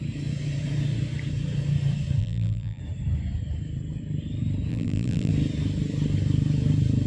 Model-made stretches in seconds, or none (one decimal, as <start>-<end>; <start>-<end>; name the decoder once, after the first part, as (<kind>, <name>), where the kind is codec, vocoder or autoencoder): 2.2-2.8 (vocoder, BigVGAN v2); 4.7-5.3